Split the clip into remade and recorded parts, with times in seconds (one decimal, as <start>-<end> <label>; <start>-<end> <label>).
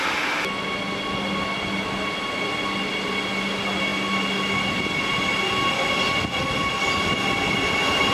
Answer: 0.0-8.1 recorded